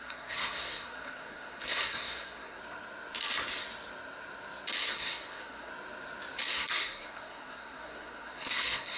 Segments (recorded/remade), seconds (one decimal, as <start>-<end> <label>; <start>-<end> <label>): 0.0-2.6 remade; 2.6-4.9 recorded; 4.9-5.7 remade; 5.7-6.5 recorded; 6.5-9.0 remade